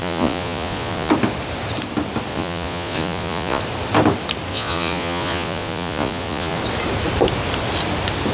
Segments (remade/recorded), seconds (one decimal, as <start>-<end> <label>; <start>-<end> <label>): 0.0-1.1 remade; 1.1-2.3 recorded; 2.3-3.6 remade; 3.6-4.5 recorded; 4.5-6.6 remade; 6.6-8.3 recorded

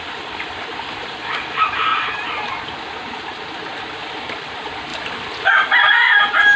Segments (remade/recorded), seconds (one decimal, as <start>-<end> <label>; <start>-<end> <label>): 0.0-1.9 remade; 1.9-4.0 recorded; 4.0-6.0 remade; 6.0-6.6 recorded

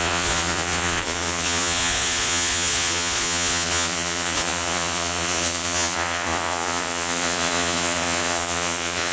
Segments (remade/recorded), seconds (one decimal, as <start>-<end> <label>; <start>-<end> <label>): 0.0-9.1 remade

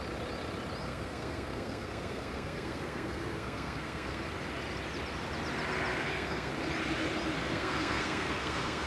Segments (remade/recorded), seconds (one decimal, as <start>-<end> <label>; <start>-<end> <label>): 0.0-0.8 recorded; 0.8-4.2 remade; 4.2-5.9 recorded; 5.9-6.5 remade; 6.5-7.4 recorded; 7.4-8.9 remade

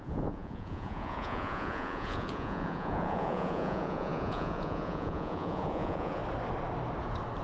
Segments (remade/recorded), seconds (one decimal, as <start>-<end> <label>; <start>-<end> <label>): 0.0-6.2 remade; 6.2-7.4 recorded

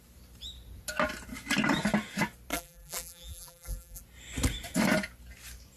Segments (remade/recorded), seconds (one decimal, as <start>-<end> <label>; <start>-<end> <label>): 0.0-2.5 recorded; 2.5-4.0 remade; 4.0-5.8 recorded

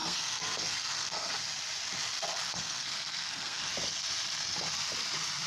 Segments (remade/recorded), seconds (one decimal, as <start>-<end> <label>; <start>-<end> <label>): 0.0-1.3 remade; 1.3-2.5 recorded; 2.5-3.6 remade; 3.6-5.5 recorded